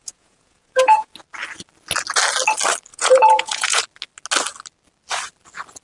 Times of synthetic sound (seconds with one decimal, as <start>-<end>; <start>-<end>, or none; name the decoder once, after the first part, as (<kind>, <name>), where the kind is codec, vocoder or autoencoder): 0.0-1.1 (vocoder, Vocos); 2.9-3.8